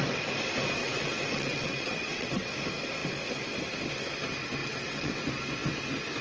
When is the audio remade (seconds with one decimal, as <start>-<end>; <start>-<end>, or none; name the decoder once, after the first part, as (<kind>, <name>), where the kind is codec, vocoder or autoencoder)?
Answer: 0.8-2.5 (vocoder, WaveNeXt); 4.6-5.1